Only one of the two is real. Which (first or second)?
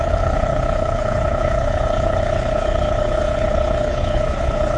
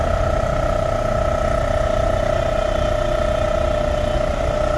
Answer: second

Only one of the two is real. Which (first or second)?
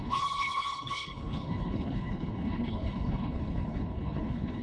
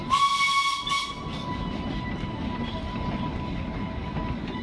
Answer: second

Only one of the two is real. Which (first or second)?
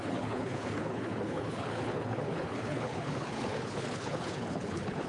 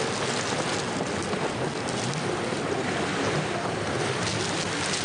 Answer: second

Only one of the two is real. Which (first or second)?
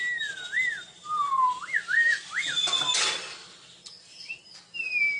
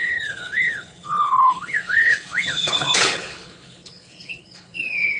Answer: first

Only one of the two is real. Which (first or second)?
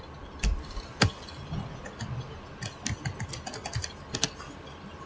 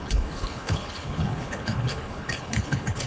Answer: first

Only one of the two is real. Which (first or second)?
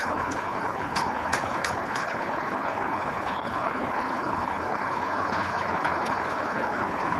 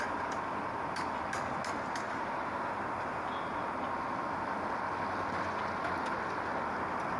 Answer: second